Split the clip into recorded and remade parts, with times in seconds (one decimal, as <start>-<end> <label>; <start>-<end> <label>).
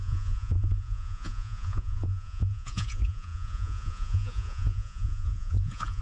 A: 0.0-6.0 remade